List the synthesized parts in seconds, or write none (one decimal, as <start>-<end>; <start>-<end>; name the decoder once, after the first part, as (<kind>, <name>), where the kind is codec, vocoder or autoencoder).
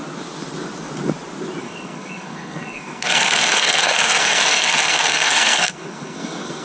1.6-6.6 (codec, SNAC)